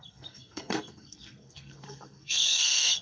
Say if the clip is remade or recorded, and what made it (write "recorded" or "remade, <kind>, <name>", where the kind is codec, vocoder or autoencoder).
remade, codec, SNAC